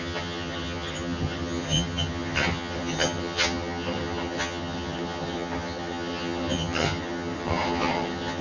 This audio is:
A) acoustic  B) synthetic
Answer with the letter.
B